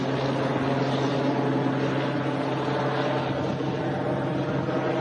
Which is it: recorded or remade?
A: recorded